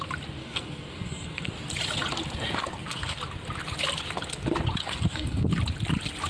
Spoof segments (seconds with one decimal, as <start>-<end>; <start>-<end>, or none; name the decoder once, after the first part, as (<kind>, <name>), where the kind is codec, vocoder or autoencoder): 0.4-1.5 (codec, SNAC); 2.6-3.2; 4.8-5.5